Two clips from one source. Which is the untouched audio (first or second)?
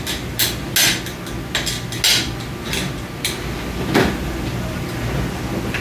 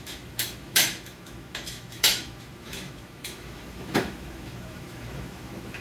first